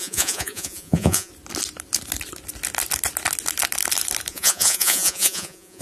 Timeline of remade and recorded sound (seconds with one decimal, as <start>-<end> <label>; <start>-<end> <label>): 0.0-1.3 remade; 1.3-4.3 recorded; 4.3-5.8 remade